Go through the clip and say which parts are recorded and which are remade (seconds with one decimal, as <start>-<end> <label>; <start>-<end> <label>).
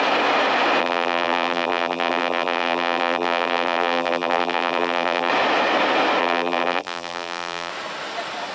0.0-0.8 recorded; 0.8-5.3 remade; 5.3-6.2 recorded; 6.2-7.7 remade; 7.7-8.5 recorded